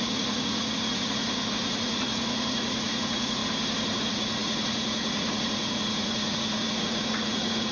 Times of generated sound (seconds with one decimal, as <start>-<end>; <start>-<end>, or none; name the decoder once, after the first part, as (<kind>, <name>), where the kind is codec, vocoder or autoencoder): 0.0-3.4 (vocoder, Vocos); 4.0-7.7